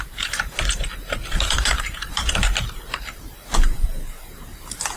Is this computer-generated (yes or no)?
yes